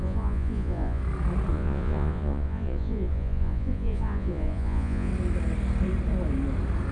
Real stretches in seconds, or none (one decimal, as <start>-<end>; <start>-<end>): 1.0-1.5; 5.1-6.9